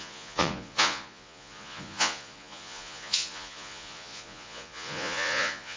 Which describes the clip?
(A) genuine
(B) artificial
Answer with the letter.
B